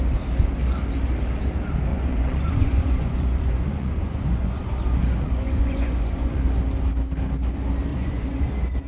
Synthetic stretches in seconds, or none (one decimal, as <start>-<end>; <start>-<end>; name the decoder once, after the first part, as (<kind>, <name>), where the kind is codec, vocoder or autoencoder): 1.9-6.4 (vocoder, Vocos); 7.9-8.5